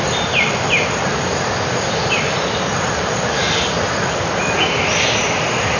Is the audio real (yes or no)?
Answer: yes